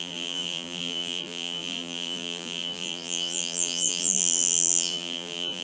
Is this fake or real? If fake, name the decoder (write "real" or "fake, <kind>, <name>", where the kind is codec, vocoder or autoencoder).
fake, vocoder, BigVGAN v2